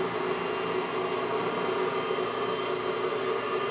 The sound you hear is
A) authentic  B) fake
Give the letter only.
A